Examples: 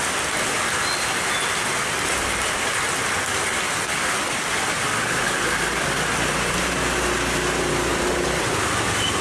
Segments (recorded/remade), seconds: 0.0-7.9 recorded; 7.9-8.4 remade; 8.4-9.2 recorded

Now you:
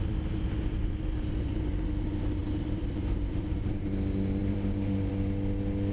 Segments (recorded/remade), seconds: 0.0-0.8 recorded; 0.8-1.9 remade; 1.9-2.4 recorded; 2.4-3.6 remade; 3.6-4.4 recorded; 4.4-5.1 remade; 5.1-5.9 recorded

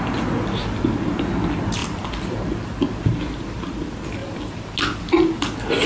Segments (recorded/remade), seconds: 0.0-5.9 recorded

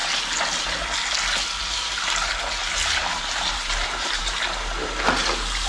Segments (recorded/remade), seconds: 0.0-2.6 recorded; 2.6-4.2 remade; 4.2-5.7 recorded

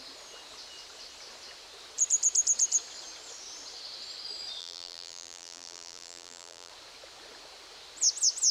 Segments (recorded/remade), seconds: 0.0-4.6 recorded; 4.6-6.7 remade; 6.7-8.5 recorded

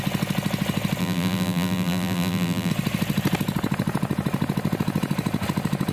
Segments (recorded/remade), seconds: 0.0-1.0 recorded; 1.0-2.7 remade; 2.7-5.9 recorded

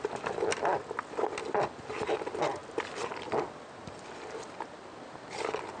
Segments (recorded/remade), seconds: 0.0-5.8 recorded